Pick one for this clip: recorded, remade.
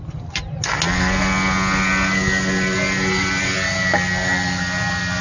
recorded